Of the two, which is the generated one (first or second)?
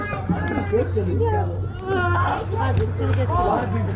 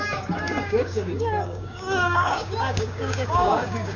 second